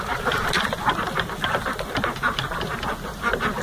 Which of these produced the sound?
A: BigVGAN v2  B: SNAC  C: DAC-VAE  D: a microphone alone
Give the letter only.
D